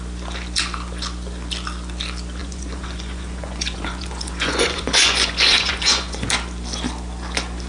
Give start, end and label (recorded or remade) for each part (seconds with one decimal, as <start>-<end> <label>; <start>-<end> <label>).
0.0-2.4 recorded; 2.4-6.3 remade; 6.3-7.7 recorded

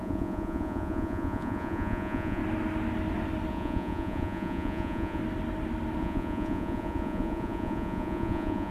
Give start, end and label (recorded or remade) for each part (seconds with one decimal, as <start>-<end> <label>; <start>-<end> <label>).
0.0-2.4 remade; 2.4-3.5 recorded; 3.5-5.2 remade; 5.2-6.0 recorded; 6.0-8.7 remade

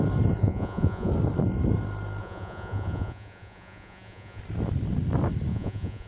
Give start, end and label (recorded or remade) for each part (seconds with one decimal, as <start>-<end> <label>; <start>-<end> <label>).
0.0-0.4 recorded; 0.4-1.1 remade; 1.1-2.2 recorded; 2.2-4.4 remade; 4.4-5.5 recorded; 5.5-6.1 remade

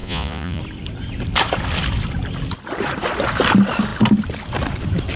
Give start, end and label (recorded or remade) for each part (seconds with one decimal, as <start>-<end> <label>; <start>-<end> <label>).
0.0-0.6 remade; 0.6-5.2 recorded